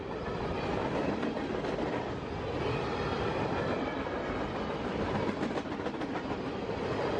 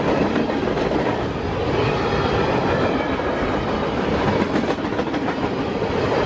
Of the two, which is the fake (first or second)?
second